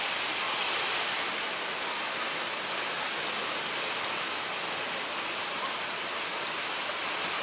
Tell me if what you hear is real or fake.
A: real